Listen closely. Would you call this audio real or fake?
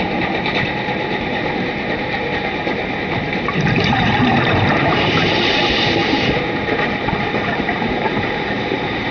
fake